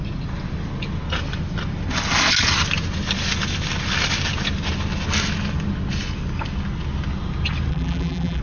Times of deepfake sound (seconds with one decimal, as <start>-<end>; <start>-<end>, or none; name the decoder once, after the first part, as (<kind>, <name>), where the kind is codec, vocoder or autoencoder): 7.7-8.4 (vocoder, BigVGAN v2)